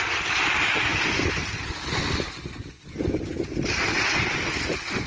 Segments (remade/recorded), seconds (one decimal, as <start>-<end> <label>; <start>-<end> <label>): 0.0-5.1 recorded